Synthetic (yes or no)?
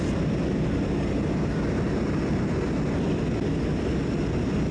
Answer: no